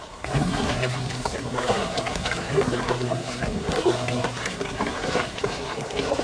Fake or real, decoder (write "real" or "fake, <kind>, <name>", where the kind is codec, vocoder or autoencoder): fake, codec, SNAC